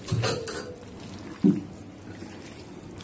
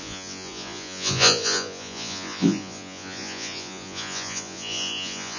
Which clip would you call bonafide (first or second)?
first